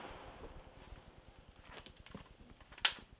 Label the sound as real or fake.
real